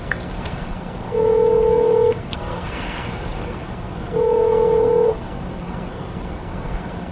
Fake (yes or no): yes